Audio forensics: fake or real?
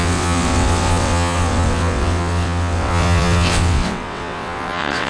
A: fake